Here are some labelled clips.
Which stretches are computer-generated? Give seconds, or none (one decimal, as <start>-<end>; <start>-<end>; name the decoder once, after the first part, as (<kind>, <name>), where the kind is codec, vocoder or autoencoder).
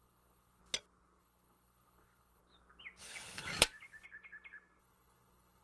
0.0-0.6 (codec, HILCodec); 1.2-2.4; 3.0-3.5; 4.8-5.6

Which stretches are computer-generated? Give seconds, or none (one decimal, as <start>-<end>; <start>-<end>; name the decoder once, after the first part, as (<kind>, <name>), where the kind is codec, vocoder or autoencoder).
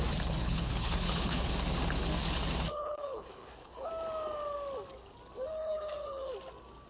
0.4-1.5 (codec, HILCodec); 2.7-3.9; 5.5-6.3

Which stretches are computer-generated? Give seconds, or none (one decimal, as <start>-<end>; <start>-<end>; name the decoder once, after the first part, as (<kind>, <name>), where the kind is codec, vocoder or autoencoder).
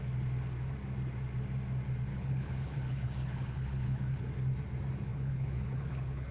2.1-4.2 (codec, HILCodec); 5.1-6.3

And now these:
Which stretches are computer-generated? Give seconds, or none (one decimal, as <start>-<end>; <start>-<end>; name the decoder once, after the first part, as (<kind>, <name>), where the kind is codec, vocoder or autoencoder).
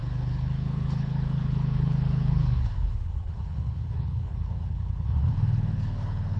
0.0-6.4 (codec, HILCodec)